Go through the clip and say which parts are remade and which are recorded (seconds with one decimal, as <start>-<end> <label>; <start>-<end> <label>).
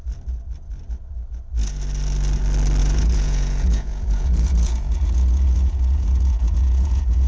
0.0-2.8 recorded; 2.8-7.3 remade